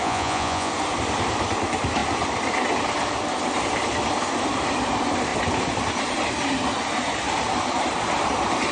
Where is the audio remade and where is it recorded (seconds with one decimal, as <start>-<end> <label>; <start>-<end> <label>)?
0.0-0.7 remade; 0.7-8.7 recorded